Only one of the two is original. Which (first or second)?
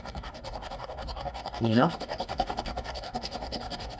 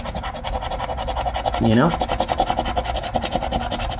second